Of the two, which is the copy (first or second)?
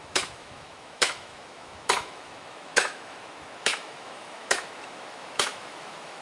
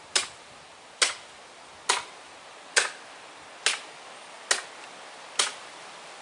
first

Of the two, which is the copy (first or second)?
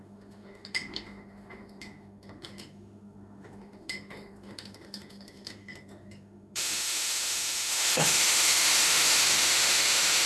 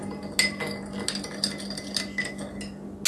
first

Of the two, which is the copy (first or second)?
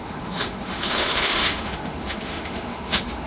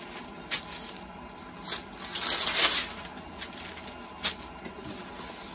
first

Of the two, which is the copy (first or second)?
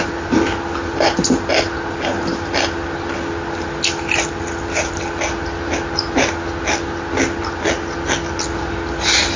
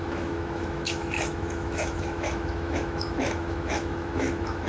second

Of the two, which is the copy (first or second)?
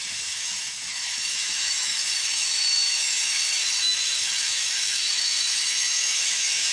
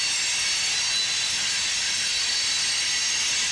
first